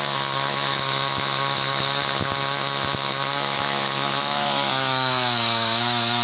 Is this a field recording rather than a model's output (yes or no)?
no